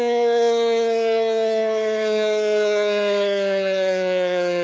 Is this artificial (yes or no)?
yes